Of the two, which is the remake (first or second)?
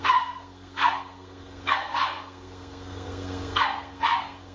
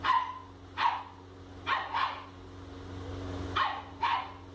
first